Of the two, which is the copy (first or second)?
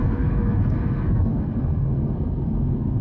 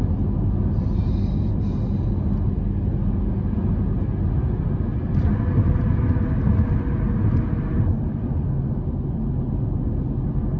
first